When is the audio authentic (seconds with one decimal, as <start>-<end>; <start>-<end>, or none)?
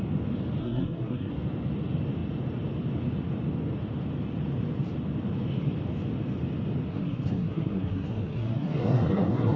0.0-0.6; 1.3-6.9